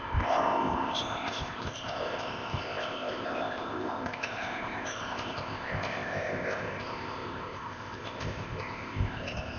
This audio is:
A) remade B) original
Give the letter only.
A